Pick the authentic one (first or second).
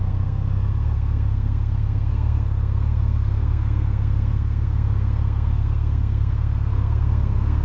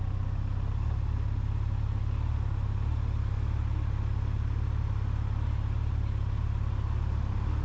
second